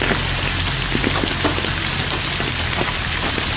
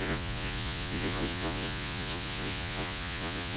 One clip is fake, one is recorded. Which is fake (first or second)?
second